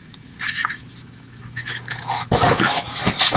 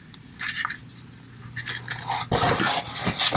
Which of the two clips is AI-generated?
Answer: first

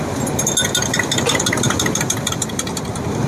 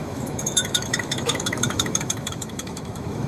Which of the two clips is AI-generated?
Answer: second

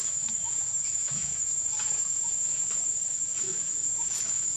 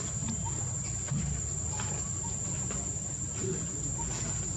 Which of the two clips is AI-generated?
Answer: first